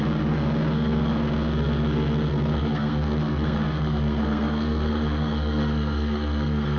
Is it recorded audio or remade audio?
remade